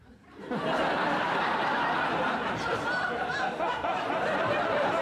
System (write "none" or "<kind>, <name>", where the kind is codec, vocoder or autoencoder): none